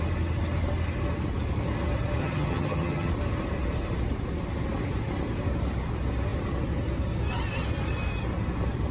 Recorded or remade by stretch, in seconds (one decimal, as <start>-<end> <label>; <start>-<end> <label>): 0.0-2.2 recorded; 2.2-3.1 remade; 3.1-8.9 recorded